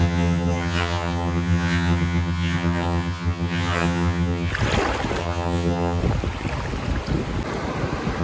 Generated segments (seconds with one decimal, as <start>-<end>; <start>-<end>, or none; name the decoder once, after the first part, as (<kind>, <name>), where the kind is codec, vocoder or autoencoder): 0.0-4.5 (vocoder, HiFi-GAN); 5.2-6.0